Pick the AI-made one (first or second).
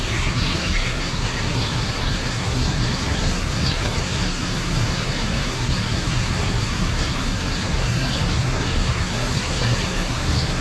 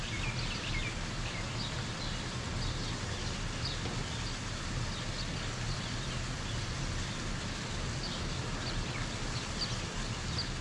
first